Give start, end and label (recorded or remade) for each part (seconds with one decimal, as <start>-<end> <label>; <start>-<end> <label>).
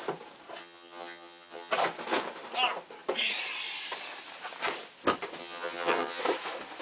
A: 0.0-0.6 recorded; 0.6-1.7 remade; 1.7-5.4 recorded; 5.4-6.2 remade; 6.2-6.8 recorded